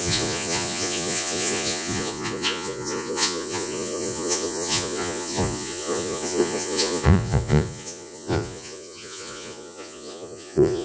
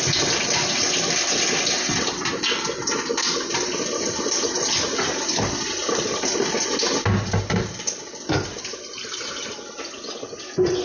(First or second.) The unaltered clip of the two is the second